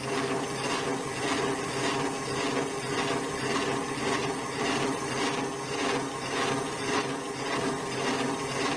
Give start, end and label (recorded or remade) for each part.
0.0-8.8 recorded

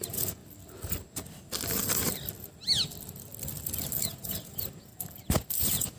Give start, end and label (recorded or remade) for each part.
0.0-0.4 remade; 0.4-4.0 recorded; 4.0-4.9 remade; 4.9-5.6 recorded; 5.6-6.0 remade

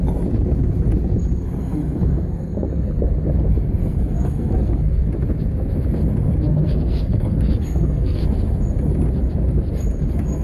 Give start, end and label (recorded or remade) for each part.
0.0-1.6 recorded; 1.6-3.1 remade; 3.1-3.8 recorded; 3.8-5.1 remade; 5.1-6.5 recorded; 6.5-8.2 remade; 8.2-10.4 recorded

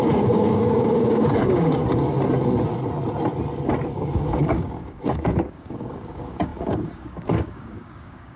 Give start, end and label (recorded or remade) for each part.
0.0-1.8 remade; 1.8-3.9 recorded; 3.9-8.4 remade

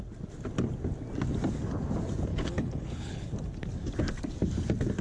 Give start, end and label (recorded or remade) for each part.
0.0-2.3 recorded; 2.3-3.3 remade; 3.3-5.0 recorded

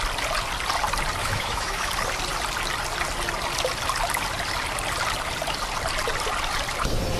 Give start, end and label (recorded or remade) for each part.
0.0-1.2 recorded; 1.2-1.9 remade; 1.9-7.2 recorded

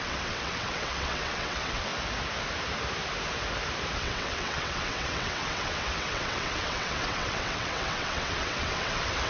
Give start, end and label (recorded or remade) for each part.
0.0-1.9 remade; 1.9-3.9 recorded; 3.9-9.3 remade

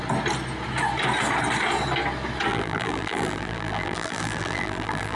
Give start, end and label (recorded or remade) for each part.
0.0-2.5 recorded; 2.5-5.2 remade